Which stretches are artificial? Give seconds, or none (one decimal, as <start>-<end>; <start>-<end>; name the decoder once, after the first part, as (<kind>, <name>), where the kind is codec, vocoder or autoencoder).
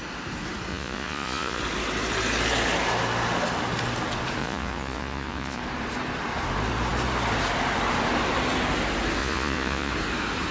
0.7-1.6 (vocoder, Vocos); 4.4-5.6; 9.2-9.9